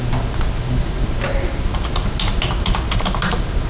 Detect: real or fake real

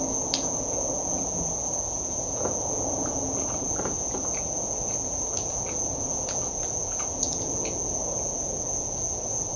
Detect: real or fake fake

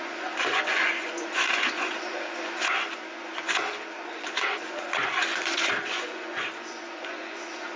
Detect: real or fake fake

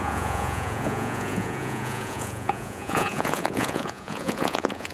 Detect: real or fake fake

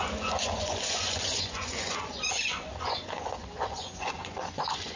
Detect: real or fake fake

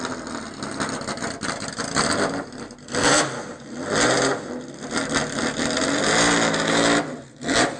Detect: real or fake real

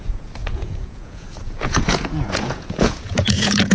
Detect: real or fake fake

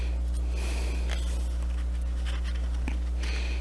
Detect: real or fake real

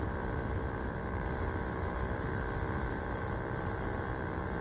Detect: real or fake real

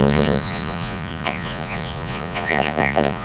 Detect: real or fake fake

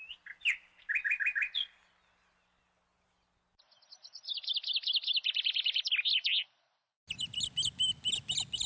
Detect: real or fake real